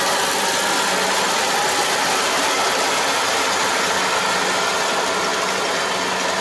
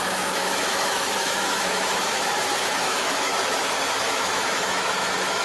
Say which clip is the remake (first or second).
second